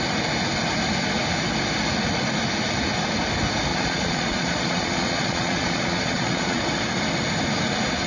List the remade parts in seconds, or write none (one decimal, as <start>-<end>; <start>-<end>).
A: 3.7-6.6

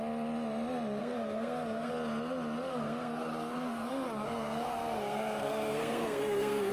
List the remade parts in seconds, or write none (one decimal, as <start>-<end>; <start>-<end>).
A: 1.0-1.9; 2.7-6.7

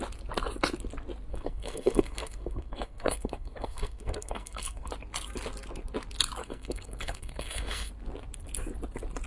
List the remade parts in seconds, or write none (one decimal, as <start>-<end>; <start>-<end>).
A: 1.3-4.9; 6.4-7.9

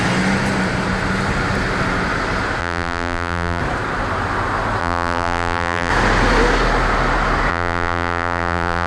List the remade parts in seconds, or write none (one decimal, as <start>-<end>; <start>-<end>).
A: 2.6-3.6; 4.8-5.9; 7.5-8.9

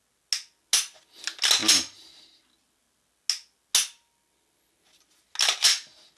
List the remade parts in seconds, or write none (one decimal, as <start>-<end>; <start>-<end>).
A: none